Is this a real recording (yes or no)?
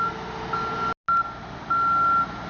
yes